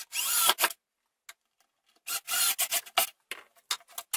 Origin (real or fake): real